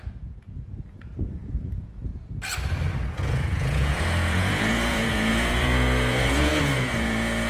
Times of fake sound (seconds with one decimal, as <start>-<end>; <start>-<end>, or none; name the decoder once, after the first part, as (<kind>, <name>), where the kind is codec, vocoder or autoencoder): 0.0-2.1 (vocoder, Vocos); 3.1-7.5